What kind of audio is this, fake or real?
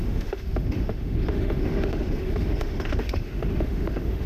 fake